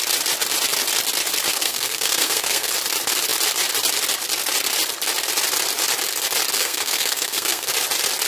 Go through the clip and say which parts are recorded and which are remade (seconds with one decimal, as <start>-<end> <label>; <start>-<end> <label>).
0.0-1.5 recorded; 1.5-2.7 remade; 2.7-6.5 recorded; 6.5-7.7 remade; 7.7-8.3 recorded

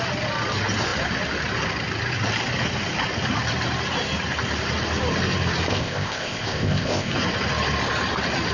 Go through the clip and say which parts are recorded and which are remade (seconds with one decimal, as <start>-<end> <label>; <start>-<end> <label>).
0.0-5.7 recorded; 5.7-7.1 remade; 7.1-8.5 recorded

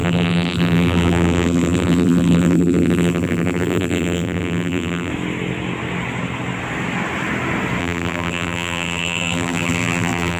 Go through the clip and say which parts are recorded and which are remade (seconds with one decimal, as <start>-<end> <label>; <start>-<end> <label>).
0.0-5.1 remade; 5.1-7.8 recorded; 7.8-10.4 remade